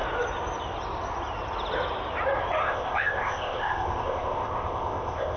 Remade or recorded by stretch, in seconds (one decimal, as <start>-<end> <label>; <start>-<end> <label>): 0.0-2.6 recorded; 2.6-5.4 remade